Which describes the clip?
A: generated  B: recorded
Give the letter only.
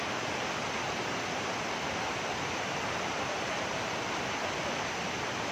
A